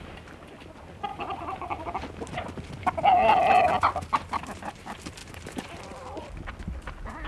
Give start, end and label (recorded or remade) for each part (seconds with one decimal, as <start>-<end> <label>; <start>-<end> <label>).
0.0-5.2 recorded; 5.2-5.8 remade; 5.8-7.3 recorded